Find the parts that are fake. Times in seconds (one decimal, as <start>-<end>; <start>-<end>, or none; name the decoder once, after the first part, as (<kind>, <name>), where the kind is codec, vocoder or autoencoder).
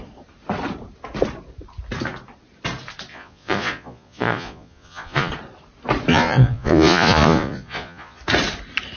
3.1-5.3 (vocoder, Vocos); 6.1-8.2